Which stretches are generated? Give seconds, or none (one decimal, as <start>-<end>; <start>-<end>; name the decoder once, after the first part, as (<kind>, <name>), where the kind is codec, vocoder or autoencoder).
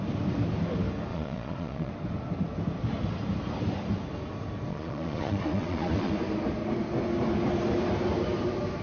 1.1-1.9 (vocoder, Vocos); 4.7-6.1